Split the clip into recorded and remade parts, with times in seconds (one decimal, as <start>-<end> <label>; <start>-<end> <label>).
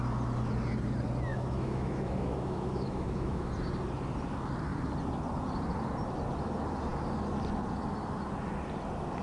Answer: 0.0-1.3 recorded; 1.3-3.5 remade; 3.5-9.2 recorded